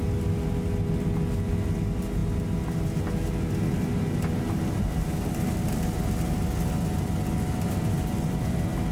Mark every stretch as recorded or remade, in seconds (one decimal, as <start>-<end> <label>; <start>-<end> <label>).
0.0-8.9 recorded